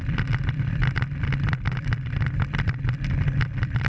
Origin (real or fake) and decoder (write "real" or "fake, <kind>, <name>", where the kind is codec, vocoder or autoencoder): fake, vocoder, BigVGAN v2